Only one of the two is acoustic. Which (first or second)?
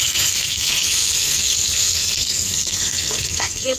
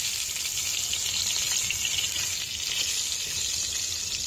second